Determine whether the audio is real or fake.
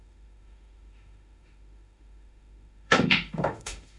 fake